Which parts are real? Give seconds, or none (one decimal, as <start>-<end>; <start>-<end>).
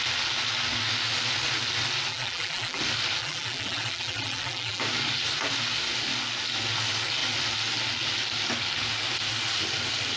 0.0-2.1; 2.8-3.2; 4.8-10.2